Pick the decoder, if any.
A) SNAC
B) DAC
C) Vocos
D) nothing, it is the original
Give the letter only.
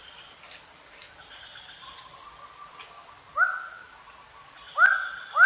D